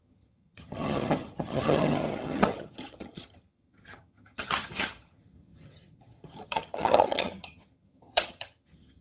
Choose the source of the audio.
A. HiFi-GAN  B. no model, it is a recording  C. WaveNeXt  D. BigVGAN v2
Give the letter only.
A